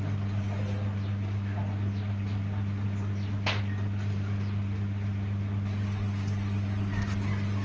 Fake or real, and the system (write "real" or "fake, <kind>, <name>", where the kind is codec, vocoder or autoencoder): real